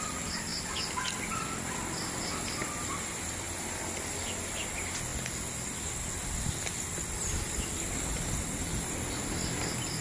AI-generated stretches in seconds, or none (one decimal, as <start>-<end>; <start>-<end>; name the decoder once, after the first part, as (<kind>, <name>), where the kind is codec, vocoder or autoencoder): none